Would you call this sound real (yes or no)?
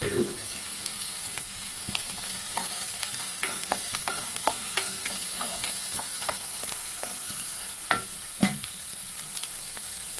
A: no